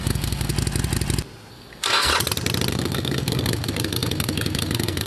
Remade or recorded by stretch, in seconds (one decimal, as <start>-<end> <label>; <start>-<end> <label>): 0.0-0.5 remade; 0.5-1.5 recorded; 1.5-2.1 remade; 2.1-2.7 recorded; 2.7-5.1 remade